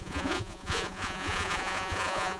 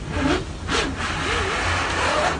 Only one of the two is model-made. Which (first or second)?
first